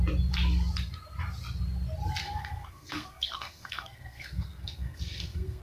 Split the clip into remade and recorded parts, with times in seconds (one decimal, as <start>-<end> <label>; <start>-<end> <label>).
0.0-2.2 recorded; 2.2-5.6 remade